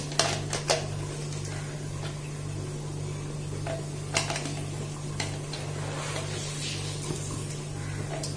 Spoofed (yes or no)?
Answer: no